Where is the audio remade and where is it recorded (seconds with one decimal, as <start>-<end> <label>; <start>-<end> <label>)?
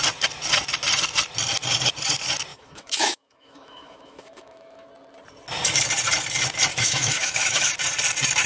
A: 0.0-2.5 recorded; 2.5-4.9 remade; 4.9-6.7 recorded; 6.7-7.7 remade; 7.7-8.5 recorded